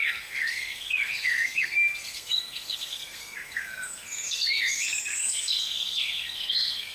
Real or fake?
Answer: fake